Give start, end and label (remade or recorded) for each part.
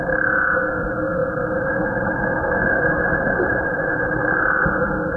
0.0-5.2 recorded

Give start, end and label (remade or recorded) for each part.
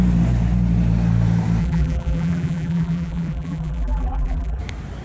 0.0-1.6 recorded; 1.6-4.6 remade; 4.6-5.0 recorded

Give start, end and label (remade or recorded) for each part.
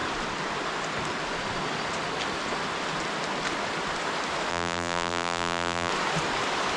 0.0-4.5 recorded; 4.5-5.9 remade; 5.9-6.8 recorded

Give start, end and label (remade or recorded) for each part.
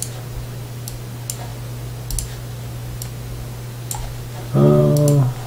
0.0-5.5 recorded